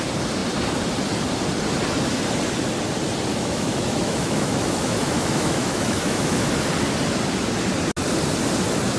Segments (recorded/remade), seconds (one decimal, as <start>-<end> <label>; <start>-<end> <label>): 0.0-3.3 recorded; 3.3-6.5 remade; 6.5-9.0 recorded

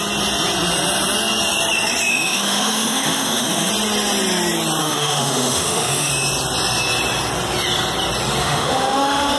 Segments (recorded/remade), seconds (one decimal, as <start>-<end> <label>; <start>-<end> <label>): 0.0-2.1 recorded; 2.1-3.7 remade; 3.7-4.8 recorded; 4.8-6.1 remade; 6.1-8.4 recorded; 8.4-9.4 remade